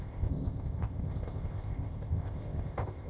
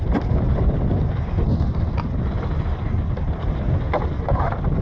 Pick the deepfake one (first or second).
first